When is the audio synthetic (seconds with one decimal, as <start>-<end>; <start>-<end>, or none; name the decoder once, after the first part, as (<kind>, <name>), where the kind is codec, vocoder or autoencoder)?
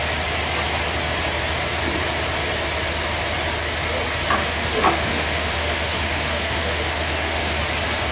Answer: 4.4-7.6 (autoencoder, DAC-VAE)